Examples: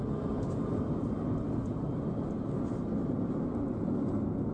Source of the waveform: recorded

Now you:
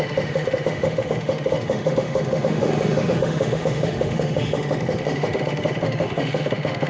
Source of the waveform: remade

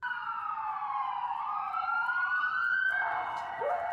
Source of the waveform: remade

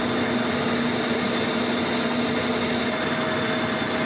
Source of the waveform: recorded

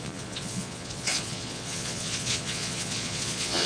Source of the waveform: remade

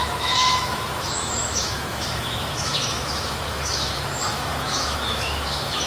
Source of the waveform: remade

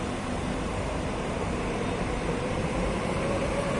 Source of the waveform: remade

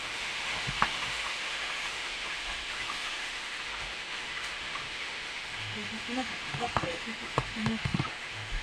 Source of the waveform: remade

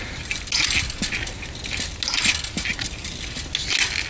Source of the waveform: recorded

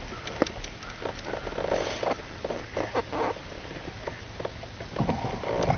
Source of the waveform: recorded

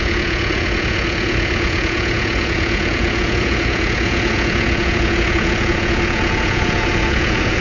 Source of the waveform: remade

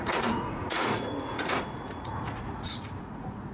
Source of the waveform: remade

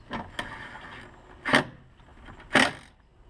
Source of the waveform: recorded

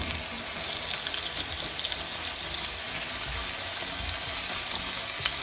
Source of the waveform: recorded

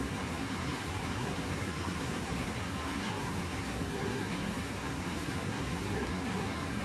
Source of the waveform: remade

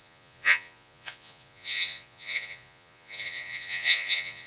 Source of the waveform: remade